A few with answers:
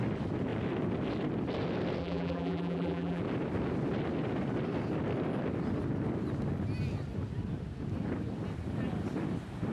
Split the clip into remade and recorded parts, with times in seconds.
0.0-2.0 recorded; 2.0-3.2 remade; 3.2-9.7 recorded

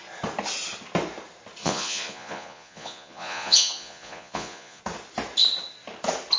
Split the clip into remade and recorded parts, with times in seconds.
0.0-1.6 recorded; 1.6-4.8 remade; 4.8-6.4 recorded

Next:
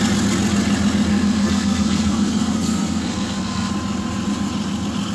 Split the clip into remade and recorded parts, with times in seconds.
0.0-1.1 recorded; 1.1-3.7 remade; 3.7-5.1 recorded